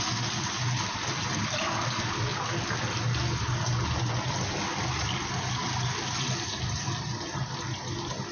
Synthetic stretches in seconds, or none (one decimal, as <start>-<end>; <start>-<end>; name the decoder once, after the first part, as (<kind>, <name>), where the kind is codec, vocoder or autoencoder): none